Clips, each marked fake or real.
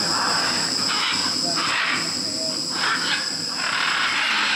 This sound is real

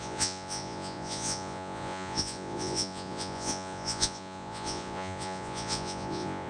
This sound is fake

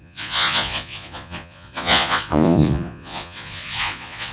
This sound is fake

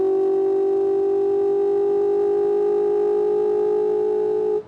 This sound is real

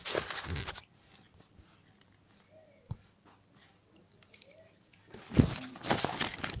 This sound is real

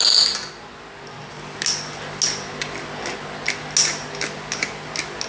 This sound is real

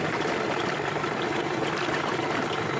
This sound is real